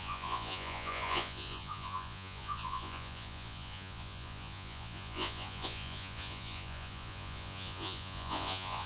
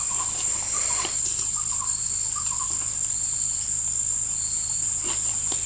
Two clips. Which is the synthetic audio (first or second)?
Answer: first